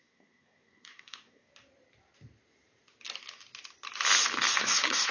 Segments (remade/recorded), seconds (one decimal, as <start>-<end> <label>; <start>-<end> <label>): 0.0-1.5 remade; 1.5-4.6 recorded; 4.6-5.1 remade